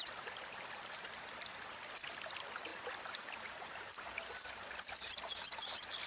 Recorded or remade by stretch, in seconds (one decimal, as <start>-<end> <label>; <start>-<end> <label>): 0.0-5.5 remade; 5.5-6.1 recorded